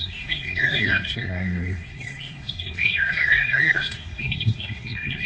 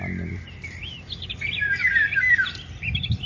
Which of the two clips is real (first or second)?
second